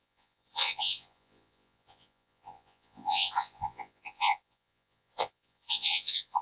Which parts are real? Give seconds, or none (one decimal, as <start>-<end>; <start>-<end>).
none

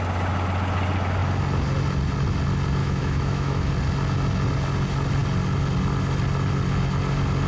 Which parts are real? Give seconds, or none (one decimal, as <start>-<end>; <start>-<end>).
0.0-2.8; 3.7-7.5

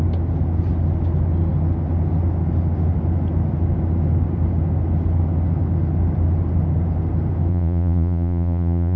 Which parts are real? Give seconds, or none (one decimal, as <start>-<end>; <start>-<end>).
0.0-7.5

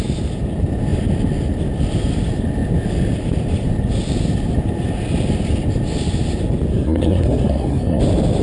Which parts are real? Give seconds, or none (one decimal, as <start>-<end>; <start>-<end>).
0.0-6.7; 8.0-8.4

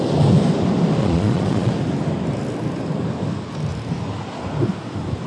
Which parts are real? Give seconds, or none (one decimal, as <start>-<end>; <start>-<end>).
0.0-1.0; 1.7-5.3

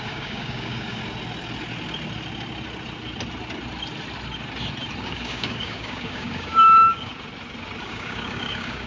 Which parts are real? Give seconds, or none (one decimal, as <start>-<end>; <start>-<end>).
1.0-5.0; 7.1-7.8

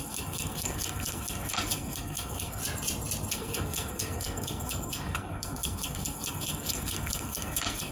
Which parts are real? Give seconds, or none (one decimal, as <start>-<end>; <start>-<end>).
2.6-3.3

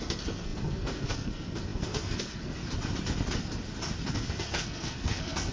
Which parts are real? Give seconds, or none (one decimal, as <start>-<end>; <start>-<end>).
2.6-4.1